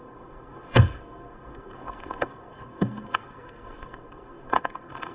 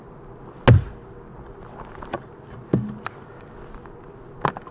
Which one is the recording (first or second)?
second